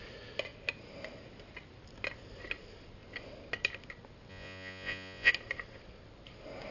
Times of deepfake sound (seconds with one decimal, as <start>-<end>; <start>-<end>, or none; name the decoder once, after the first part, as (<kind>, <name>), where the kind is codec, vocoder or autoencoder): 4.3-5.3 (vocoder, Vocos)